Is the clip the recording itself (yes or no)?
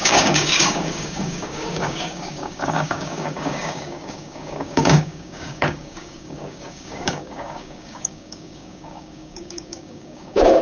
no